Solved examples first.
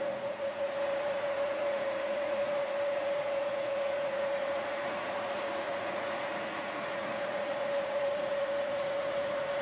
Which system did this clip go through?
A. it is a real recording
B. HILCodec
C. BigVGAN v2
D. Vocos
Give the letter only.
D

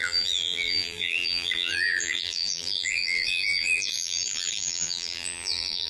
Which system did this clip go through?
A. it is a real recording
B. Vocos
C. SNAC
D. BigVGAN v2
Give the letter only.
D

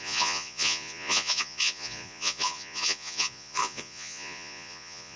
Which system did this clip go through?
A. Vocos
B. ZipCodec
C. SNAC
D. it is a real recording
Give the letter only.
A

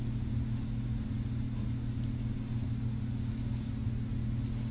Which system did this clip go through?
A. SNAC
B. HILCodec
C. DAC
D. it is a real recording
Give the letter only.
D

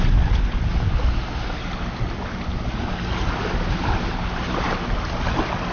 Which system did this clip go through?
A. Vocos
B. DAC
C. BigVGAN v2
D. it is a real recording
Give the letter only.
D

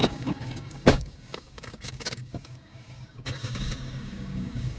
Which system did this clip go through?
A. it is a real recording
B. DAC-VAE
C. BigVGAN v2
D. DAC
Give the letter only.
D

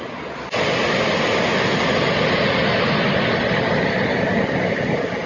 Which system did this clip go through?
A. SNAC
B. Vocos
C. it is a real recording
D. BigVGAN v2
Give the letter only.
C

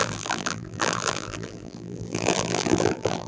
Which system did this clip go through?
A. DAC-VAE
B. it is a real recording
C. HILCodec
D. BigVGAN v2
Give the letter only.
D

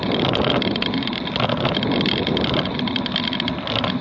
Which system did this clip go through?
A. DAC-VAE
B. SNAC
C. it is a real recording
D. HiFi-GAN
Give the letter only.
C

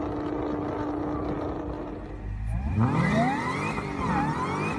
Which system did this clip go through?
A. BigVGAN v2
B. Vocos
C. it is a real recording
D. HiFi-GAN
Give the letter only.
C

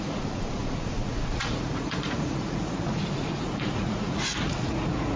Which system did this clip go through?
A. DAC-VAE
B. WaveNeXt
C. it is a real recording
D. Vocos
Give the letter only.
D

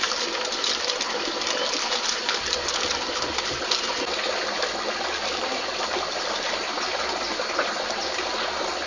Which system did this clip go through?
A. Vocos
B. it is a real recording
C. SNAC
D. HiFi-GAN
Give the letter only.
B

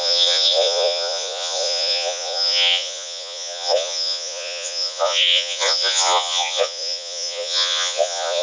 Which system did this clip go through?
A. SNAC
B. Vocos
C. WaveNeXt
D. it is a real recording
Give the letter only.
B